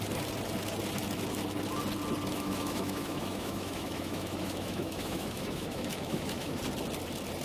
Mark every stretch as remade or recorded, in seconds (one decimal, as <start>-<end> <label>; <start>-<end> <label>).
0.0-2.3 recorded; 2.3-6.6 remade; 6.6-7.4 recorded